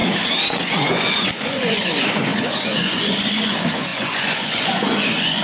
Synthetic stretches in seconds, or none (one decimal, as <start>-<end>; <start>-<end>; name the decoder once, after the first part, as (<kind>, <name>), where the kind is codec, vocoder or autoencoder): 0.5-5.4 (vocoder, Vocos)